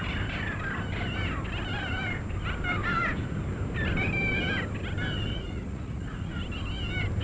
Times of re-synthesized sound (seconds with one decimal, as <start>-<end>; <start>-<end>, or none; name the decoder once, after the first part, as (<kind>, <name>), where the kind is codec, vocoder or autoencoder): 5.3-6.4 (vocoder, Vocos)